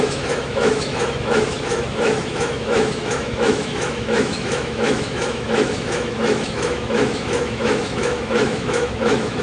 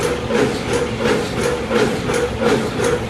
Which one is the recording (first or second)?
second